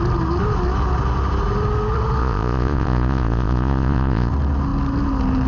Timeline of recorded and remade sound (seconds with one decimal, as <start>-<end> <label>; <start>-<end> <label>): 0.0-2.2 recorded; 2.2-4.3 remade; 4.3-5.5 recorded